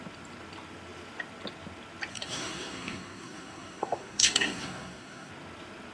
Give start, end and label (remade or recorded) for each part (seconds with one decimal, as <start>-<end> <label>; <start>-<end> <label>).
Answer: 0.0-2.1 recorded; 2.1-5.3 remade; 5.3-5.9 recorded